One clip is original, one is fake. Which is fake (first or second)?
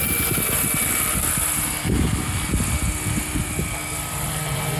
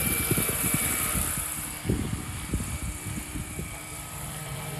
second